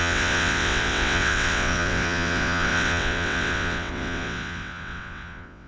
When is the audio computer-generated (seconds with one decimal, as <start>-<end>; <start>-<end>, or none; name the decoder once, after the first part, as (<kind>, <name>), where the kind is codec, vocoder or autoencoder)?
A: 0.0-5.7 (vocoder, WaveNeXt)